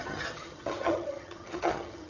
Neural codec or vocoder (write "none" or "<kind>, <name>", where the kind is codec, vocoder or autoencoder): vocoder, HiFi-GAN